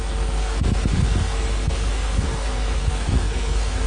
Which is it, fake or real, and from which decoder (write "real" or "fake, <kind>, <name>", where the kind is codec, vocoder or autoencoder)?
fake, codec, SNAC